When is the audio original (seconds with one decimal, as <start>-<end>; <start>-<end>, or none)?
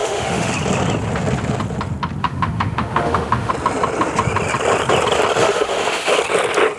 0.5-2.2; 3.5-5.4; 6.2-6.8